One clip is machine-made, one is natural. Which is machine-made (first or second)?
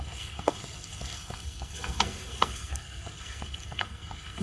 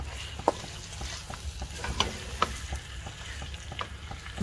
first